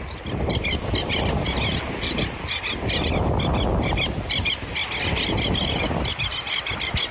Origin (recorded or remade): recorded